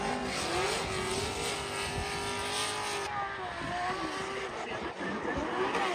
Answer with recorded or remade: recorded